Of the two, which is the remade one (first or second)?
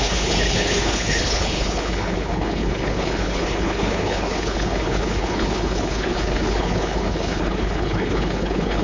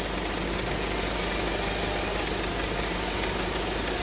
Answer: first